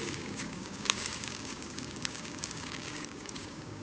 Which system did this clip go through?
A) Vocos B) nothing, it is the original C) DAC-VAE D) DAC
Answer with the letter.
D